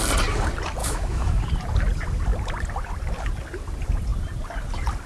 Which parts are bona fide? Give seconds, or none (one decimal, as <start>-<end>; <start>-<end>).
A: 0.0-0.8; 1.4-5.1